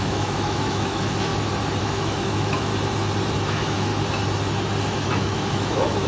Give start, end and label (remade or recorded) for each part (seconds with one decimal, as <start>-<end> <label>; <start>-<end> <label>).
0.0-1.3 remade; 1.3-1.8 recorded; 1.8-2.7 remade; 2.7-3.4 recorded; 3.4-3.9 remade; 3.9-4.8 recorded; 4.8-6.1 remade